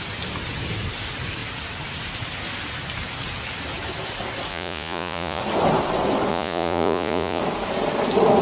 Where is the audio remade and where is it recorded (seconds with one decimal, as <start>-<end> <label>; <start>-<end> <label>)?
0.0-4.5 recorded; 4.5-5.4 remade; 5.4-6.3 recorded; 6.3-7.4 remade; 7.4-8.4 recorded